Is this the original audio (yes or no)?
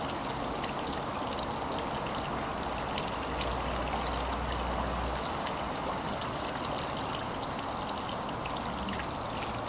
yes